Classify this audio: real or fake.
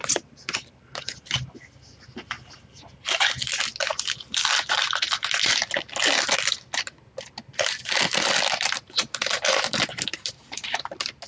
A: real